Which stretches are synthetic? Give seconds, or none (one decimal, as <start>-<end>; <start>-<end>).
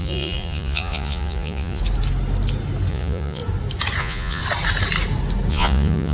0.0-1.8; 2.9-3.4; 4.0-4.4; 5.5-6.1